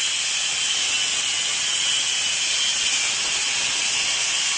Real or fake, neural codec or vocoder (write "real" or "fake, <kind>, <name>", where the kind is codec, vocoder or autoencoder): real